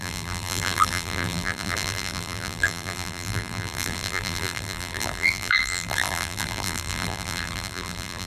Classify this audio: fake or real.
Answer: fake